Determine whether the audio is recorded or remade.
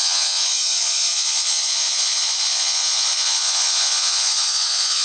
remade